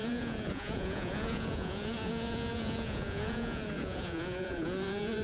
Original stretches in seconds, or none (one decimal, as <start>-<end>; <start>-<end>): none